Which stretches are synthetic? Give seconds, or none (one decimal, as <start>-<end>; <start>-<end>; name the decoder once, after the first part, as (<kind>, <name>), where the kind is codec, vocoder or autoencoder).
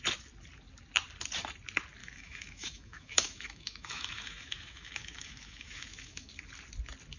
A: 2.0-6.3 (autoencoder, DAC-VAE)